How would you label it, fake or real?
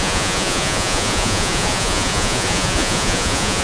fake